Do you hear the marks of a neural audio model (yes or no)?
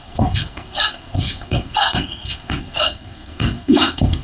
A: yes